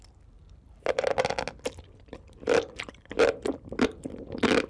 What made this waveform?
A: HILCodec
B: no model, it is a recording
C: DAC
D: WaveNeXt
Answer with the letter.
B